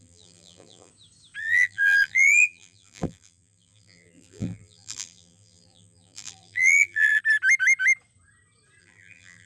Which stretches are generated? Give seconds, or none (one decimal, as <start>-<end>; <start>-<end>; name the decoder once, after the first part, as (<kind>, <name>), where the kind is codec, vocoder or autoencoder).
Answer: 0.0-0.9 (vocoder, BigVGAN v2); 1.4-7.2; 8.8-9.5